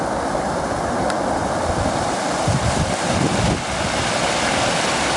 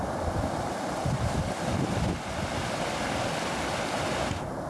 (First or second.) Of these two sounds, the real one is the first